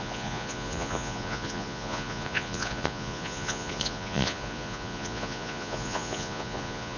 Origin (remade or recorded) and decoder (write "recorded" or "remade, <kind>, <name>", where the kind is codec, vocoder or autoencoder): remade, vocoder, Vocos